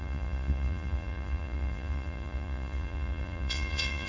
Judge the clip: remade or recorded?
remade